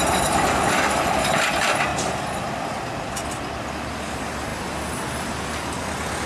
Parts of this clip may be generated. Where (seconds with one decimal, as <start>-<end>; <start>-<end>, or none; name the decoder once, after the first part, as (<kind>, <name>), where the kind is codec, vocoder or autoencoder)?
none